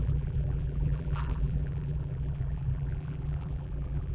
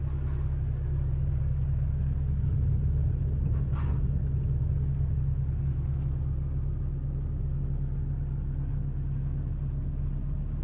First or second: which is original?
second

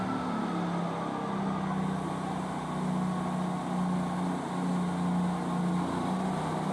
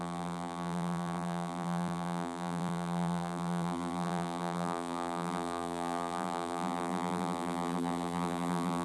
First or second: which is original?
first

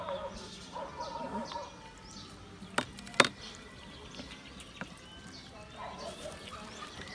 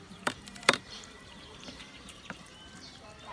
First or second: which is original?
first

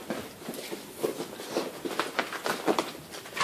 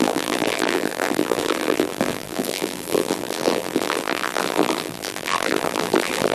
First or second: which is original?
first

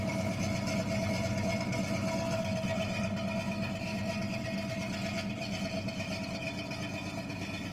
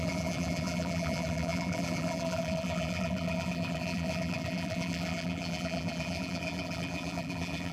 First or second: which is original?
first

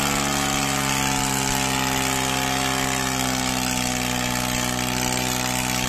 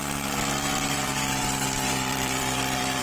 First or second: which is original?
first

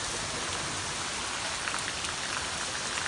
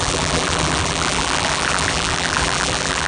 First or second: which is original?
first